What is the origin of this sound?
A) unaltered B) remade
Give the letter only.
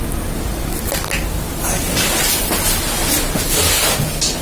A